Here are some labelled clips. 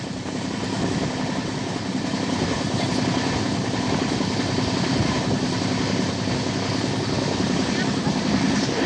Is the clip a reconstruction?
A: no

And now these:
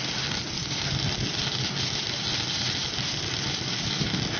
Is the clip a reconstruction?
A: no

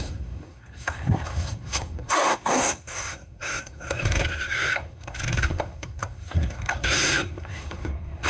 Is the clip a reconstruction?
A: yes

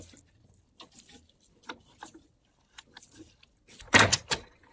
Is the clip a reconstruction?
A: no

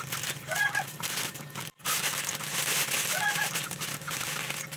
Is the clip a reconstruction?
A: no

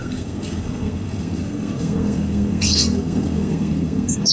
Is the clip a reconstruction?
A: yes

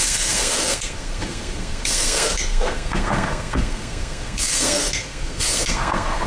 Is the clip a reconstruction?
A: yes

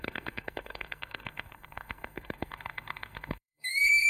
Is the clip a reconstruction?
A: yes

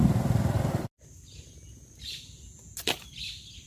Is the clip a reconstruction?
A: no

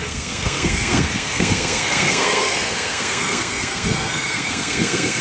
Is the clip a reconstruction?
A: yes